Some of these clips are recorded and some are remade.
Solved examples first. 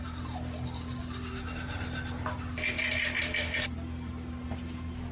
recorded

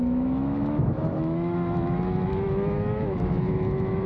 remade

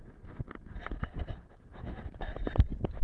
recorded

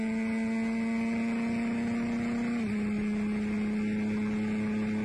recorded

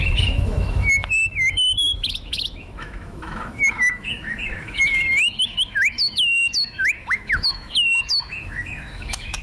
remade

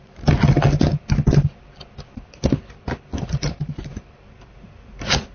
recorded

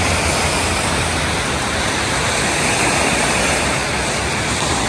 recorded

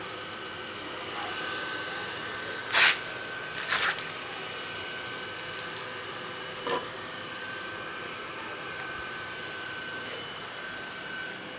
recorded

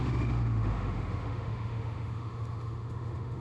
remade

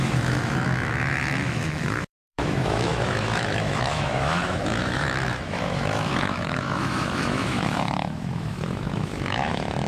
remade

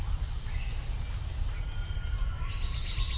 recorded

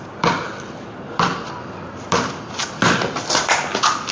recorded